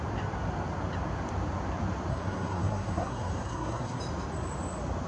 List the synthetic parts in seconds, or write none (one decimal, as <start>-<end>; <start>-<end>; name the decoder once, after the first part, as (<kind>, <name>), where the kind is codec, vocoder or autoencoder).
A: 2.1-4.0 (codec, SNAC)